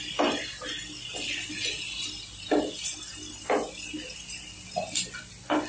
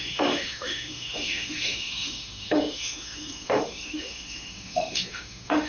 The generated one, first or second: second